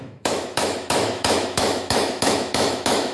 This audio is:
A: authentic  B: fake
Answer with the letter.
B